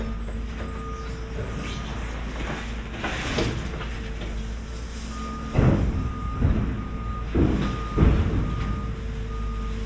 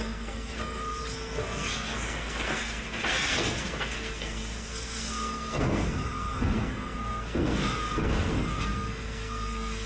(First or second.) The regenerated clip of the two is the second